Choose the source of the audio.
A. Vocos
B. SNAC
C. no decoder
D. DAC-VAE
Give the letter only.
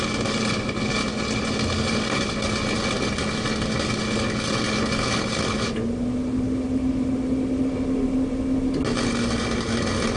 C